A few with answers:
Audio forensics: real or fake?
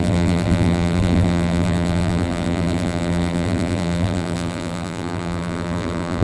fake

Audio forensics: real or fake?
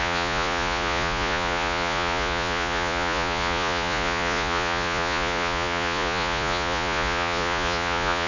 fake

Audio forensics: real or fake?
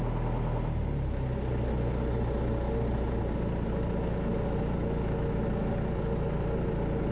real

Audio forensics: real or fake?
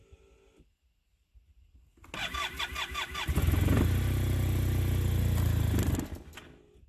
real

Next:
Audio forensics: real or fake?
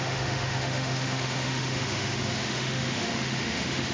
fake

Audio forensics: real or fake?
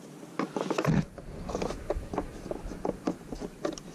real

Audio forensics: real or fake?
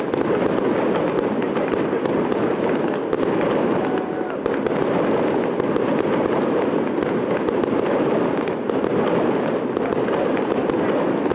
real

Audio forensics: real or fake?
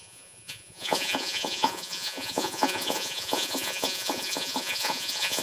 fake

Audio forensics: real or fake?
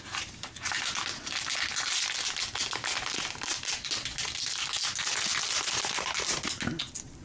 real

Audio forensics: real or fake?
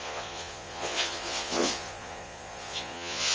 fake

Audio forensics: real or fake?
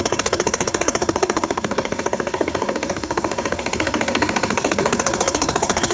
fake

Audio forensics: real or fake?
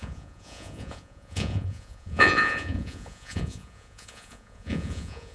fake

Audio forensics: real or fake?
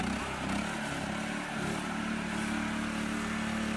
real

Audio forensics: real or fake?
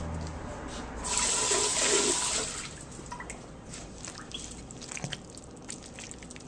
real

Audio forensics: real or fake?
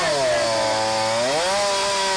real